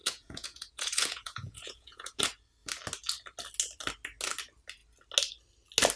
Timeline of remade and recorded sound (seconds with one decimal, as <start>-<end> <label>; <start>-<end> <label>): 0.0-2.2 remade; 2.2-6.0 recorded